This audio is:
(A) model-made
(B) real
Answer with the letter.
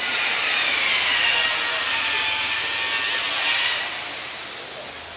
B